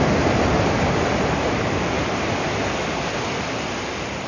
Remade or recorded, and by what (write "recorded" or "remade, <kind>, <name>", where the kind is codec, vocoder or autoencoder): recorded